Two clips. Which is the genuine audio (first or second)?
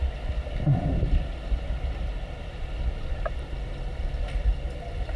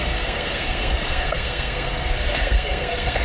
first